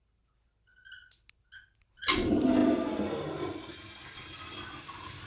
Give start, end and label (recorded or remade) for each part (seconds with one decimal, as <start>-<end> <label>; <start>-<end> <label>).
0.0-5.3 recorded